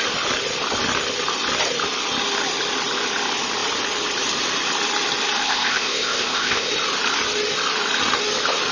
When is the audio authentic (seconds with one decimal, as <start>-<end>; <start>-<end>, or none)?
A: 0.0-5.4; 6.7-8.7